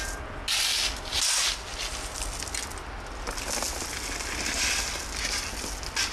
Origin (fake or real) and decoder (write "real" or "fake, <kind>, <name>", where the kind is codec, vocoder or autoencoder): real